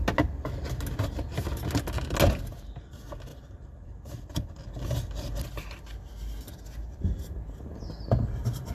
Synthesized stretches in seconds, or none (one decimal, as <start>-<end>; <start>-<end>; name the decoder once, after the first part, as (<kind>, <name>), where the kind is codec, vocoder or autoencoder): 3.3-4.7 (vocoder, BigVGAN v2); 6.9-8.7